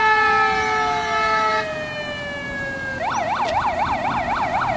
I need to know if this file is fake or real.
real